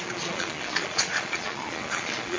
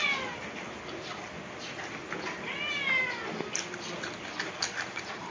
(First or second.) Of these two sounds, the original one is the second